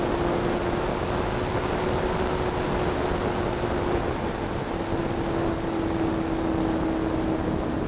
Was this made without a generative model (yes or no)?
yes